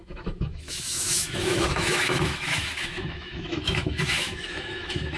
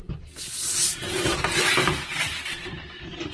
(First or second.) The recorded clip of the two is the second